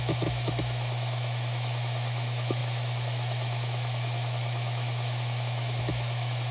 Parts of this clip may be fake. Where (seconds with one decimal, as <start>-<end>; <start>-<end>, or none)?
0.0-6.5